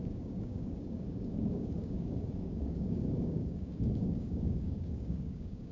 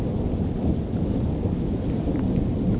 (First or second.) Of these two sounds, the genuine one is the second